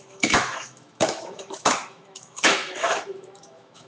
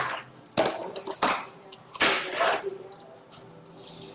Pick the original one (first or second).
second